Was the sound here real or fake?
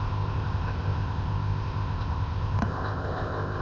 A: fake